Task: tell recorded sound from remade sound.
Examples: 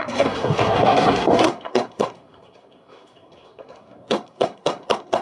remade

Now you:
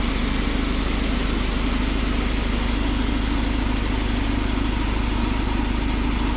recorded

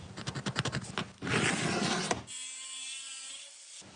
recorded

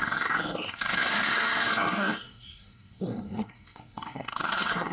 remade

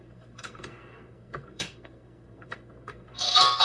remade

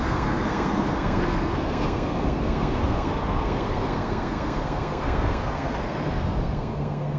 remade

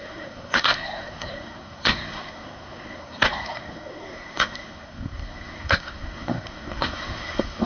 remade